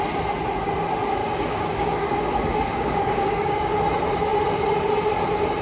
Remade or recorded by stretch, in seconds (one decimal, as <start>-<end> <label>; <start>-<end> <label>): 0.0-1.2 recorded; 1.2-3.7 remade; 3.7-5.6 recorded